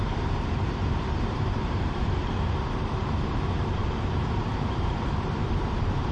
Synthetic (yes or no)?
yes